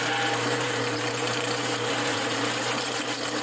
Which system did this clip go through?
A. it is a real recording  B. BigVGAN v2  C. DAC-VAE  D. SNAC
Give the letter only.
B